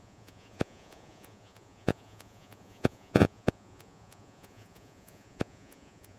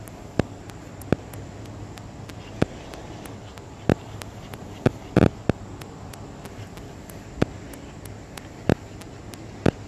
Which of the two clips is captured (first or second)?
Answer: second